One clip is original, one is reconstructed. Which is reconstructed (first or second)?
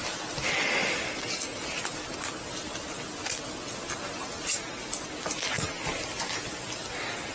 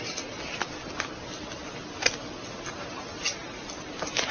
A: second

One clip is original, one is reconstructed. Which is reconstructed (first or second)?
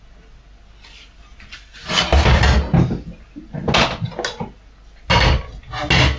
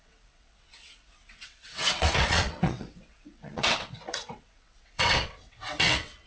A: second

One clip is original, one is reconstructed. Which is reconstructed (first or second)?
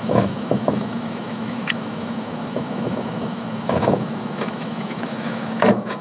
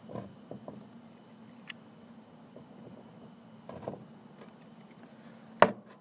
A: first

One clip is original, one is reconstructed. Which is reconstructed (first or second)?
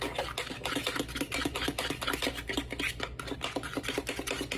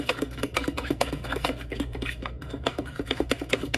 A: second